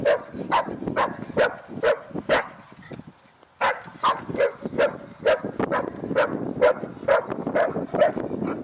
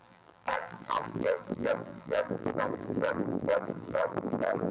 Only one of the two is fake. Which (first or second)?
second